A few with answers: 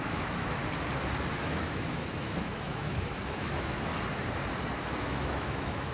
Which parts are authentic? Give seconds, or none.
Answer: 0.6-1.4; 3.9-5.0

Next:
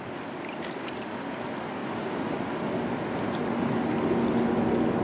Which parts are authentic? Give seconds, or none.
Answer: 0.0-5.0